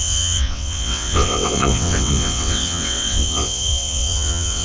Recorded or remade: remade